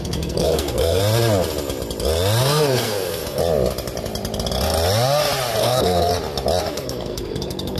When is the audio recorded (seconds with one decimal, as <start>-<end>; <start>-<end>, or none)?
1.0-2.4; 3.4-5.6; 6.1-6.6